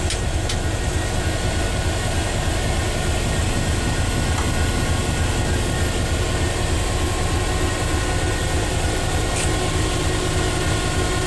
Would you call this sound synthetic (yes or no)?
no